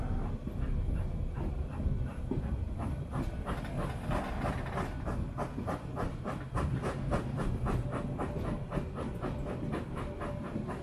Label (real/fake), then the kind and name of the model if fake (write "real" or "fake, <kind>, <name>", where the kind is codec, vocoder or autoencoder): real